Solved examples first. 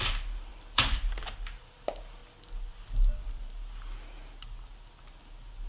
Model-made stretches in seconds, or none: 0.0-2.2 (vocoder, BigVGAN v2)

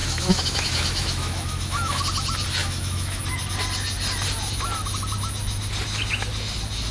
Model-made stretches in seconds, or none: 0.0-2.0 (autoencoder, DAC-VAE); 2.6-3.2